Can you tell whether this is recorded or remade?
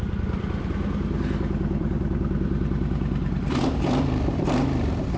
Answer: remade